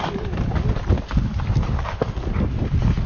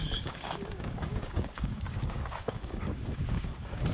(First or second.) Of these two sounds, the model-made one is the second